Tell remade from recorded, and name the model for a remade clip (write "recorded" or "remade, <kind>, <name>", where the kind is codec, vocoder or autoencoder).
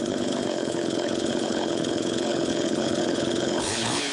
remade, codec, HILCodec